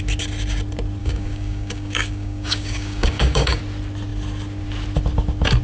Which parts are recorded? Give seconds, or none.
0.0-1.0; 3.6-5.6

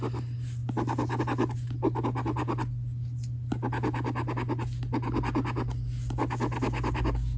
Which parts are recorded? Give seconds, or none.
0.0-7.4

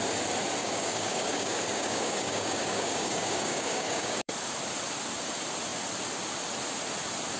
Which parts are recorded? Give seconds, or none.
0.0-0.6; 4.3-7.4

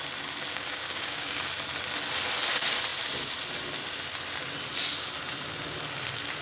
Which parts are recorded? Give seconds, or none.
0.0-0.5; 1.4-6.4

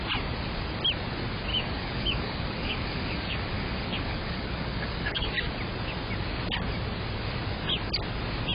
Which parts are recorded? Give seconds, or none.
0.0-1.5; 5.3-8.5

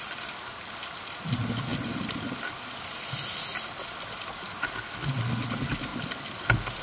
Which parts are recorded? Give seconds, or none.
0.0-6.8

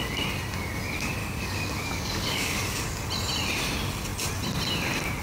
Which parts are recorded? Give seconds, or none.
0.0-1.2; 3.1-5.2

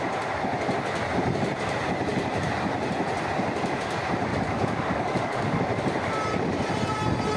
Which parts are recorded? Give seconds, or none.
0.0-4.3; 5.6-7.4